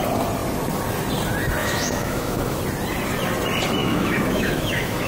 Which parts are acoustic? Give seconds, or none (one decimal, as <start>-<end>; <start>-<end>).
0.0-1.6; 2.6-3.8